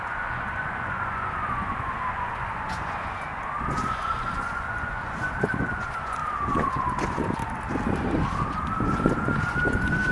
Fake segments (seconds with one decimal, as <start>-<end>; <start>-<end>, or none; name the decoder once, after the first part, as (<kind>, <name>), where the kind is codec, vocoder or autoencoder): 0.0-7.4 (vocoder, Vocos); 8.5-10.1